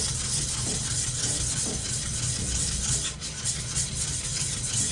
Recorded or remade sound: recorded